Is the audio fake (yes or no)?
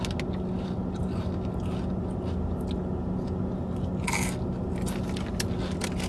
no